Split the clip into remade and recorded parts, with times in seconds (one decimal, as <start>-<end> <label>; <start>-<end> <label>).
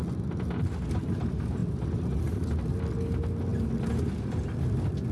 0.0-5.1 recorded